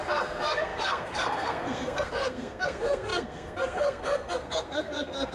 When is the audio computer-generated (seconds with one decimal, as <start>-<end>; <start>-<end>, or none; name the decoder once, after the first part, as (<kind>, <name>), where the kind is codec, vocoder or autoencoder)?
0.0-5.3 (codec, SNAC)